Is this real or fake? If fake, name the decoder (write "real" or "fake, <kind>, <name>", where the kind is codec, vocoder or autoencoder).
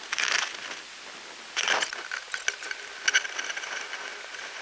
real